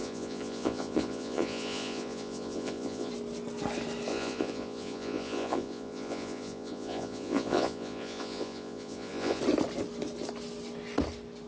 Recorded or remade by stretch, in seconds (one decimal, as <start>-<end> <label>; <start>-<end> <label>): 0.0-3.1 remade; 3.1-4.1 recorded; 4.1-9.4 remade; 9.4-11.5 recorded